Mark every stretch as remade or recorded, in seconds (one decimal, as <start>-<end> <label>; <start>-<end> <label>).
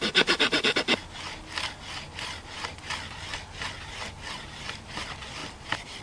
0.0-6.0 recorded